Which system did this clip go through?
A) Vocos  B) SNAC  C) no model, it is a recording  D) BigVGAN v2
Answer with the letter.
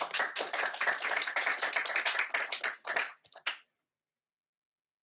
C